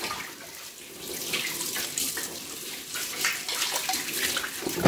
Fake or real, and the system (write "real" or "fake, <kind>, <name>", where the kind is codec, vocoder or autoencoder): real